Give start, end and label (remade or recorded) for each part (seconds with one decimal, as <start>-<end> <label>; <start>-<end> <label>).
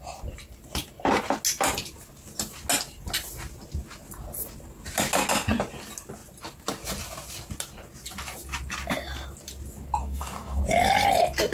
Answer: 0.0-10.0 recorded; 10.0-10.6 remade; 10.6-11.5 recorded